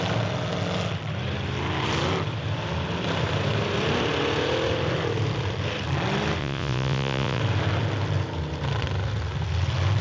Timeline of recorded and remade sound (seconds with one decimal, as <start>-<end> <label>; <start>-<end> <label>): 0.0-6.4 recorded; 6.4-7.4 remade; 7.4-10.0 recorded